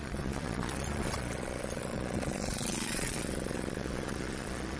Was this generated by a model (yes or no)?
yes